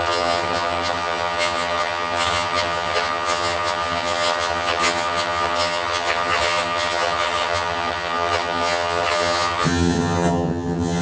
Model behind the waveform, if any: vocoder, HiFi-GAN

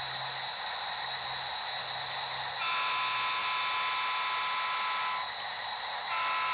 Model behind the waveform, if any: none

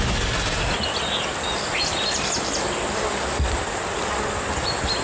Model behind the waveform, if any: none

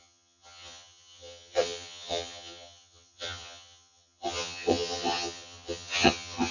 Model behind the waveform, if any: vocoder, HiFi-GAN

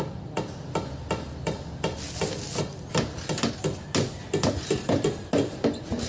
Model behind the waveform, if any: none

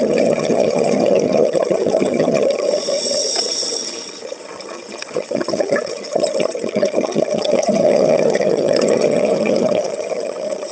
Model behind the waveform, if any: vocoder, HiFi-GAN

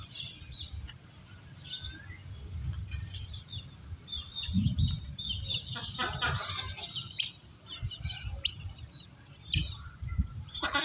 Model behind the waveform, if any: none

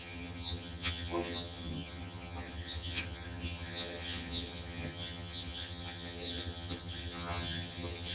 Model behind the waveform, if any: vocoder, HiFi-GAN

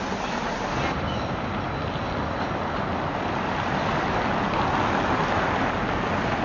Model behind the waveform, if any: none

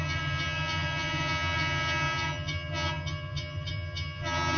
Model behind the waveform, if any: vocoder, HiFi-GAN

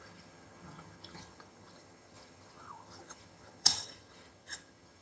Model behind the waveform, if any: vocoder, HiFi-GAN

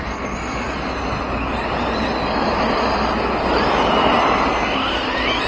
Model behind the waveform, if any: none